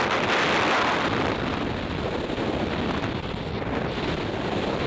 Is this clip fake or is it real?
real